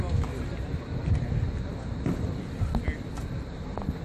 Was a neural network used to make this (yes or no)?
no